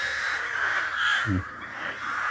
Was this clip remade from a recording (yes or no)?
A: yes